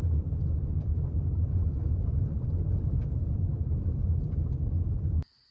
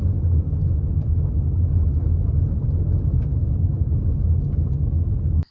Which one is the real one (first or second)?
second